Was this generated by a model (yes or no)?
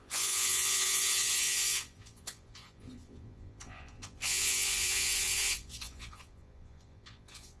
yes